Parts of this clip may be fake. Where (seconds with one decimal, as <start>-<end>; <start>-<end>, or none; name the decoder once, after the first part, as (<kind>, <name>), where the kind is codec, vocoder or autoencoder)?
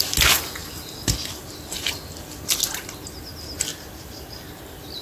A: 0.6-1.4 (vocoder, BigVGAN v2); 3.7-5.0